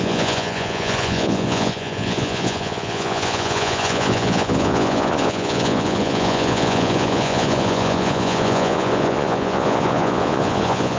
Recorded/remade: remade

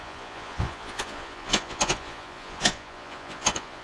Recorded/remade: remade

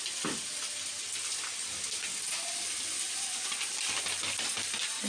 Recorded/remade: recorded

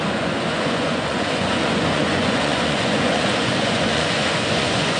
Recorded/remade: remade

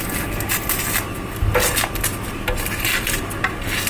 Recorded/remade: recorded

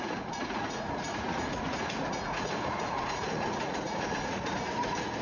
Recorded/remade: remade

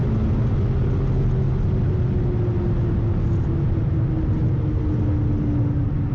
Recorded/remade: recorded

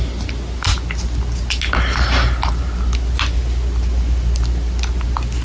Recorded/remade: recorded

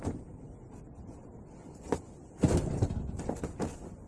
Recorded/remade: recorded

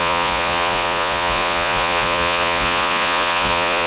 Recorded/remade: remade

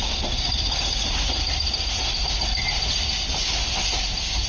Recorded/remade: recorded